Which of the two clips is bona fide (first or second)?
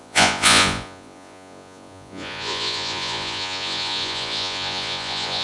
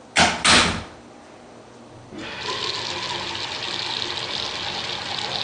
second